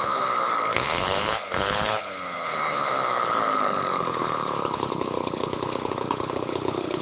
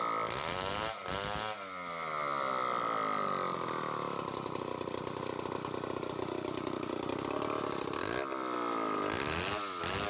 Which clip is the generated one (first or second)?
first